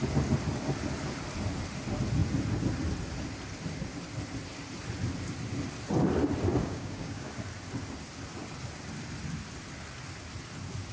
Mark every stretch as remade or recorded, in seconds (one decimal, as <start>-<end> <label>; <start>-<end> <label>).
0.0-6.6 recorded; 6.6-7.3 remade; 7.3-10.9 recorded